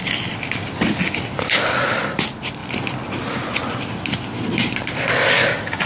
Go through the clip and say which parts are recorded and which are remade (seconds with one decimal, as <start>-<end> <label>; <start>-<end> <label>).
0.0-5.9 remade

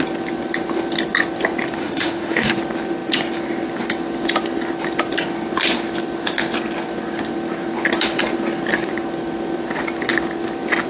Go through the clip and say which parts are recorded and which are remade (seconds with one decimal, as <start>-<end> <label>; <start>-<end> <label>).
0.0-1.8 recorded; 1.8-2.5 remade; 2.5-10.9 recorded

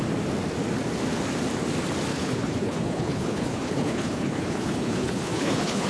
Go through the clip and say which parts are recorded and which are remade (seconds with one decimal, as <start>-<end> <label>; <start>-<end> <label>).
0.0-2.1 recorded; 2.1-5.9 remade

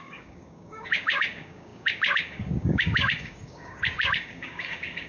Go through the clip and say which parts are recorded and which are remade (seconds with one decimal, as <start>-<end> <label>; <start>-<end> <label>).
0.0-5.1 remade

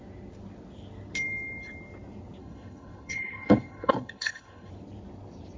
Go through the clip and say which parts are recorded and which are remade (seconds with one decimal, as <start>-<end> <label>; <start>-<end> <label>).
0.0-2.4 recorded; 2.4-4.7 remade; 4.7-5.6 recorded

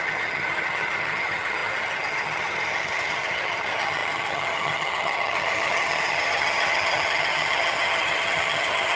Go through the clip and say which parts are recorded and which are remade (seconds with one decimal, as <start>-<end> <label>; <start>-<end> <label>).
0.0-9.0 remade

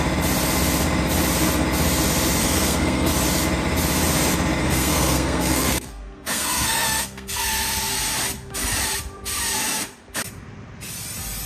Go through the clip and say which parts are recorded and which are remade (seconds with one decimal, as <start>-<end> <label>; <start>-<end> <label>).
0.0-2.4 recorded; 2.4-3.1 remade; 3.1-4.6 recorded; 4.6-7.9 remade; 7.9-11.5 recorded